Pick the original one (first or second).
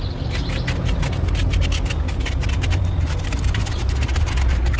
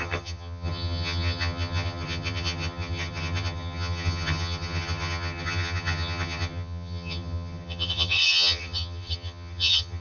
first